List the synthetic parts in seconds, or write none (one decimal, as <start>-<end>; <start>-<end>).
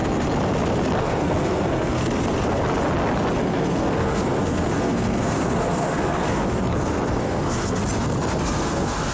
1.0-2.0; 3.4-7.8; 8.4-9.1